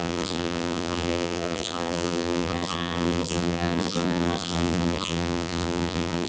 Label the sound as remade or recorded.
remade